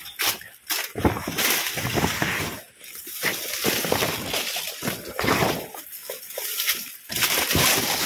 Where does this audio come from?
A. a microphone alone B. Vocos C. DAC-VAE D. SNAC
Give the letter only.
A